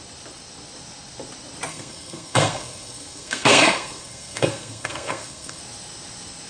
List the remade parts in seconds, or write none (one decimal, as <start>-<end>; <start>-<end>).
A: 1.7-5.6